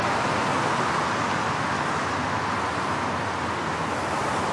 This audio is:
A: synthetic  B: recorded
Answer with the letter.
B